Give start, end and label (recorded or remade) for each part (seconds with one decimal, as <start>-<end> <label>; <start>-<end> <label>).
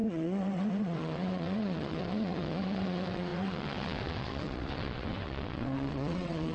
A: 0.0-6.5 remade